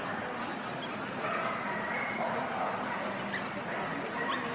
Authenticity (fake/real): real